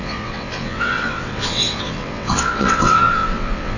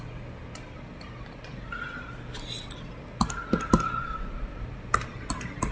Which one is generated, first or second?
first